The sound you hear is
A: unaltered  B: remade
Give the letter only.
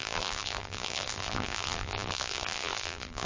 B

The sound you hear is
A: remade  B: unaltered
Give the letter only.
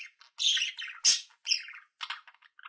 B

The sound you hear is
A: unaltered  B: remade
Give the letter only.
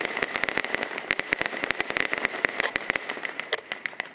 A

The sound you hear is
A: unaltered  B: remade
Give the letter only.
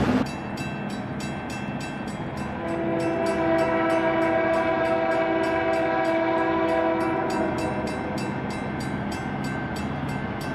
A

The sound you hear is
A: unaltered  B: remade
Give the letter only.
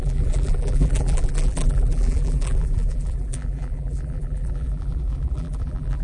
B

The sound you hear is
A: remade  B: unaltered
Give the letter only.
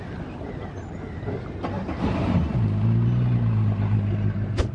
B